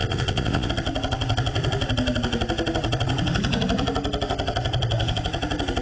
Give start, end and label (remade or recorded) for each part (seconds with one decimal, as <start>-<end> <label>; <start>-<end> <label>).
0.0-0.7 remade; 0.7-5.8 recorded